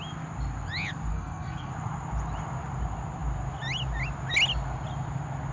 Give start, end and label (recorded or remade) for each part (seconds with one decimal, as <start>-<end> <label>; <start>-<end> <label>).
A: 0.0-1.1 recorded; 1.1-1.7 remade; 1.7-5.5 recorded

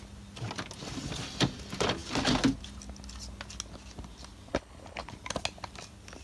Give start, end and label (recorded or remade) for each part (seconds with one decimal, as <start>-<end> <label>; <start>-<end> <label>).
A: 0.0-4.5 recorded; 4.5-5.1 remade; 5.1-6.2 recorded